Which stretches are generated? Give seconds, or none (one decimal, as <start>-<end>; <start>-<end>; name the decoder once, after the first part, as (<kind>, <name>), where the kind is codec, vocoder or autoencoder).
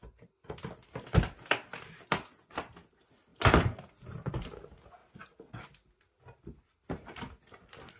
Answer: none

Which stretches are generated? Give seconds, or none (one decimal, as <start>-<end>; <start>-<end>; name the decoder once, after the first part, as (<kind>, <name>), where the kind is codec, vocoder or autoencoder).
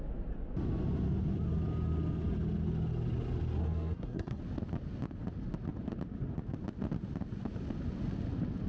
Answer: 3.6-4.4 (codec, SNAC)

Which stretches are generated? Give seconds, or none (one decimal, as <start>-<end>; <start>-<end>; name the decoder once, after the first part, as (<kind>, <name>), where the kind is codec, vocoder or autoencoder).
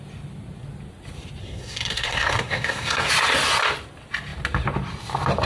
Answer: 1.4-3.1 (codec, SNAC)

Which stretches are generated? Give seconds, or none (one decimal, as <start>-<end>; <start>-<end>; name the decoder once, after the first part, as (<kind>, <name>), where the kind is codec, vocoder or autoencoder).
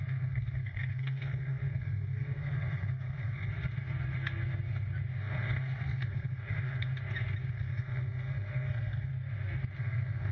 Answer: 0.0-3.5 (codec, SNAC); 5.2-6.9; 7.5-9.1; 9.8-10.3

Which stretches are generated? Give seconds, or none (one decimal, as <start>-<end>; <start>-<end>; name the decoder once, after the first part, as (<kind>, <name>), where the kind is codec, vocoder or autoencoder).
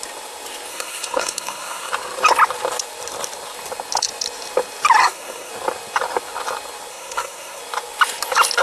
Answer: 0.7-1.9 (codec, SNAC); 5.0-5.5; 6.9-7.6